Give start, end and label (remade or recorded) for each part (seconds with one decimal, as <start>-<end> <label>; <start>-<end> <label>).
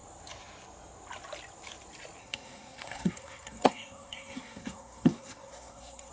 0.0-2.2 recorded; 2.2-6.1 remade